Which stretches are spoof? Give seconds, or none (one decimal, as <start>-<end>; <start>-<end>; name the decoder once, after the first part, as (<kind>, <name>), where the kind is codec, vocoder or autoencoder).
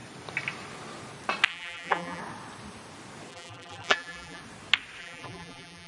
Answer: 1.5-2.2 (vocoder, BigVGAN v2); 3.3-4.4; 5.0-5.9